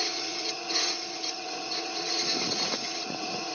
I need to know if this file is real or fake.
fake